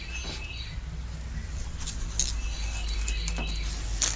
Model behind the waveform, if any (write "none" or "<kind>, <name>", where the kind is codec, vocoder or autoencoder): none